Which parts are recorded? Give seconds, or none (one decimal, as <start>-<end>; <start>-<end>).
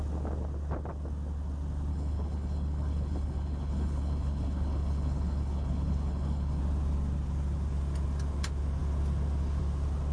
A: 0.0-1.9; 6.6-10.1